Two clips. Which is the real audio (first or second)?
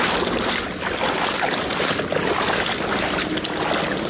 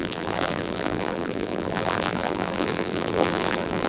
first